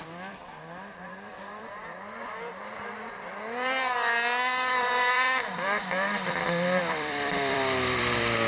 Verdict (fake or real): fake